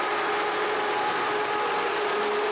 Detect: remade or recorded recorded